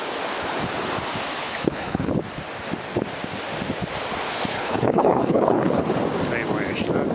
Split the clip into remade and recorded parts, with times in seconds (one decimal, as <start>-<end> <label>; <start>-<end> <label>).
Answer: 0.0-1.4 recorded; 1.4-2.1 remade; 2.1-4.5 recorded; 4.5-5.9 remade; 5.9-7.1 recorded